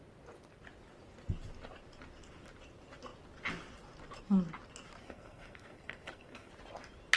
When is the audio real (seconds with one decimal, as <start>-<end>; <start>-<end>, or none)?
0.0-5.0; 6.5-7.2